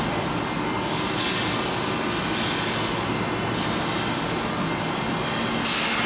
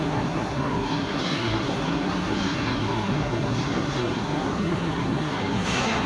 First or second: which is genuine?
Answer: first